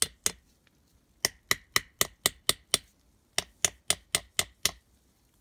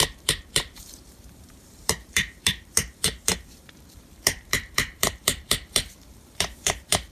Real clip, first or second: first